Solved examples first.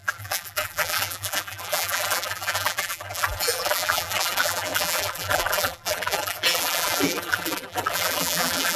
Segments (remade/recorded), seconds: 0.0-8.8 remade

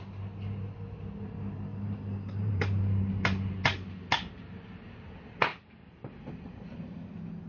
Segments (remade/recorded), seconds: 0.0-1.7 recorded; 1.7-3.5 remade; 3.5-5.5 recorded; 5.5-6.1 remade; 6.1-7.5 recorded

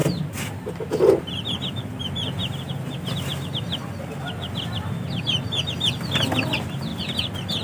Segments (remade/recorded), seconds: 0.0-7.6 recorded

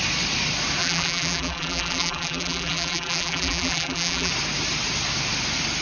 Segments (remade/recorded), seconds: 0.0-0.8 recorded; 0.8-4.3 remade; 4.3-5.8 recorded

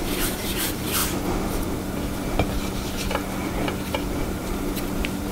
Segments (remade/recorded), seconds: 0.0-1.0 remade; 1.0-4.2 recorded; 4.2-5.3 remade

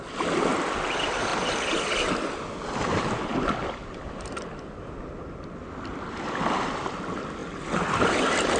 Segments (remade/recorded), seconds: 0.0-8.6 recorded

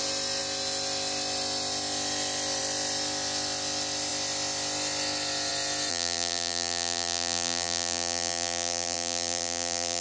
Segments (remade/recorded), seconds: 0.0-5.9 recorded; 5.9-10.0 remade